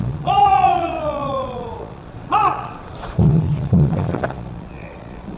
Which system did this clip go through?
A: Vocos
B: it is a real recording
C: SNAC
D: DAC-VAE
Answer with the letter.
A